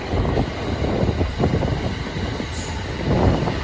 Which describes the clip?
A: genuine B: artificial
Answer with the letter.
A